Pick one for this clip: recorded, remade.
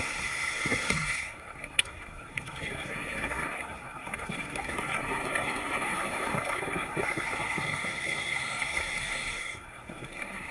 remade